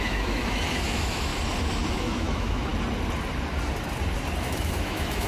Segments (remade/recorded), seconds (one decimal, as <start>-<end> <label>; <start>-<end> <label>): 0.0-1.3 remade; 1.3-1.9 recorded; 1.9-2.7 remade; 2.7-4.4 recorded; 4.4-5.3 remade

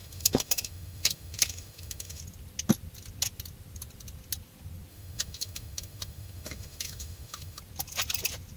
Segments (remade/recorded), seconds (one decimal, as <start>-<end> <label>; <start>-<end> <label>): 0.0-2.2 remade; 2.2-4.9 recorded; 4.9-7.6 remade; 7.6-8.6 recorded